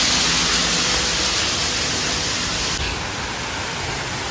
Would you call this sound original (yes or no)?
yes